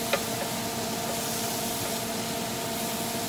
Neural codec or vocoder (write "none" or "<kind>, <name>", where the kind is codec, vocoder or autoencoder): none